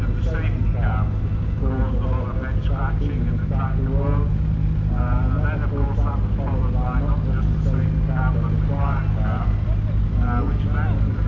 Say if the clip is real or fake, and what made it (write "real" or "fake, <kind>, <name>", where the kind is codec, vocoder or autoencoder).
real